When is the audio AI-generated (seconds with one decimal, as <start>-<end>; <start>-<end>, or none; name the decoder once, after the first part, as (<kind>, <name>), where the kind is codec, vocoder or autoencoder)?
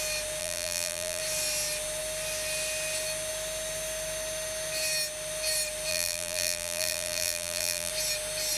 0.4-1.2 (vocoder, BigVGAN v2); 5.9-7.9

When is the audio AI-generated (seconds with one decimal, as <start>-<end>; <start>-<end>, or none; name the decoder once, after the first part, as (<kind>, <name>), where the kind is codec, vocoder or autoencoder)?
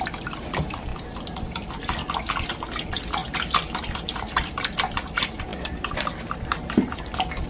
0.9-1.7 (vocoder, BigVGAN v2); 3.2-5.1; 5.5-6.7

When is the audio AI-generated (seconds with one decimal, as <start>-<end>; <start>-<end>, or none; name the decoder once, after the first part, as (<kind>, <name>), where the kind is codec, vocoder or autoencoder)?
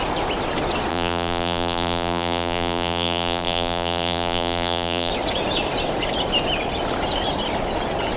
0.9-5.1 (vocoder, BigVGAN v2)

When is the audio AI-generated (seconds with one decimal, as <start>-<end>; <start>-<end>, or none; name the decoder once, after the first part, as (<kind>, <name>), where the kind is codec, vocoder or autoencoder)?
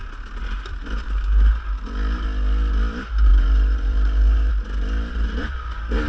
3.3-4.5 (vocoder, BigVGAN v2)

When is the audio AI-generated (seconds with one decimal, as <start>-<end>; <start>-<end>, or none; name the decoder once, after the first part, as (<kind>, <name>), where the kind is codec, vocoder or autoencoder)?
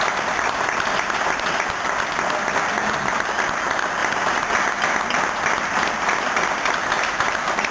none